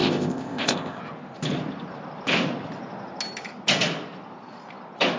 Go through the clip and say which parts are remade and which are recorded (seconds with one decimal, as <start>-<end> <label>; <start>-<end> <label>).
0.0-1.0 remade; 1.0-5.2 recorded